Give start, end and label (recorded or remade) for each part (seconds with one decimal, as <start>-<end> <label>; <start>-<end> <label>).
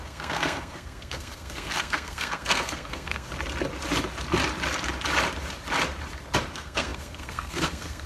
0.0-3.3 remade; 3.3-6.5 recorded; 6.5-8.1 remade